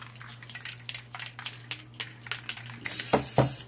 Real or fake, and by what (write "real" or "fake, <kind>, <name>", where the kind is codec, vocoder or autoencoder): real